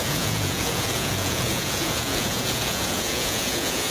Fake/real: fake